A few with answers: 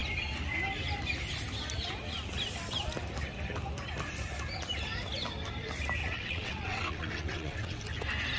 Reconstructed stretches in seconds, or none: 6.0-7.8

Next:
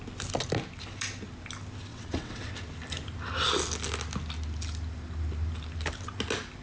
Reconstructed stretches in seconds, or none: 1.9-2.5

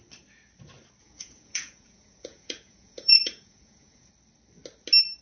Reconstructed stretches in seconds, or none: 1.0-4.1